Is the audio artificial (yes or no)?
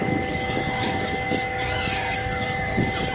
yes